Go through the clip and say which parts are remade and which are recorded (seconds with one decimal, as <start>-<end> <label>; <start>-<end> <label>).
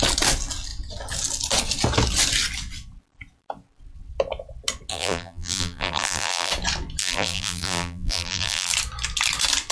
0.0-4.9 recorded; 4.9-6.5 remade; 6.5-7.0 recorded; 7.0-8.7 remade; 8.7-9.7 recorded